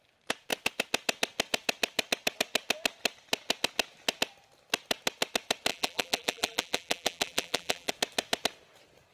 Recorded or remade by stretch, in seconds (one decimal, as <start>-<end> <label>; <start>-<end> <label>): 0.0-5.7 recorded; 5.7-7.9 remade; 7.9-9.1 recorded